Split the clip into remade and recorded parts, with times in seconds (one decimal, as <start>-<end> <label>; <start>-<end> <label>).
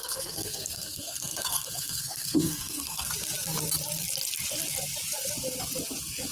0.0-3.1 remade; 3.1-6.3 recorded